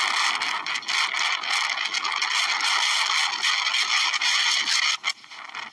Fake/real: real